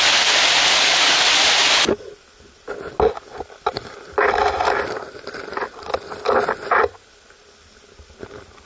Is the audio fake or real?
real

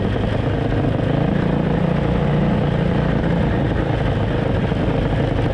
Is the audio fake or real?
real